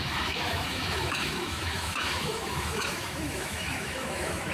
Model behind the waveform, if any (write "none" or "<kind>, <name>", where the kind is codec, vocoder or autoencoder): autoencoder, DAC-VAE